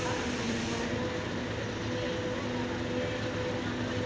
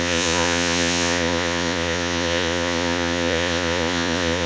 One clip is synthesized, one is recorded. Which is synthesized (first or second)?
second